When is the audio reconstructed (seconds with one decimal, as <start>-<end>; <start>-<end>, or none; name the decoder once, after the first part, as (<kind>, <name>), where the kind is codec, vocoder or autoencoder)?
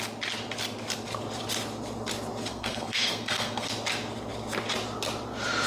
2.5-3.7 (codec, SNAC)